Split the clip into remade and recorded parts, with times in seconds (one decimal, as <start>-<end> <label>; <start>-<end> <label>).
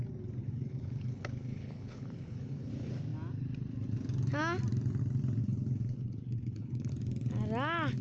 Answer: 0.0-0.4 recorded; 0.4-2.7 remade; 2.7-5.4 recorded; 5.4-6.9 remade; 6.9-8.0 recorded